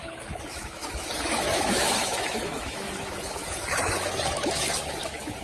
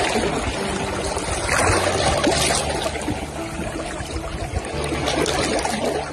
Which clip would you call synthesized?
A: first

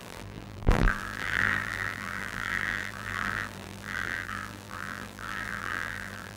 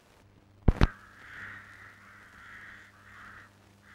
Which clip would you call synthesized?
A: first